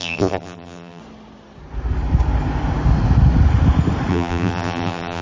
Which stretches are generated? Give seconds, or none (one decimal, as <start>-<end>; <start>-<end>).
0.0-1.0; 4.1-5.2